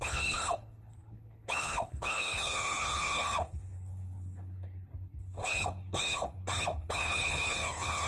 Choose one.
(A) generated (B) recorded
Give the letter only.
A